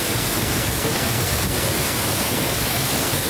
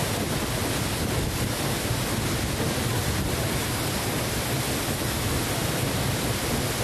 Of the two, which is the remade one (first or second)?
first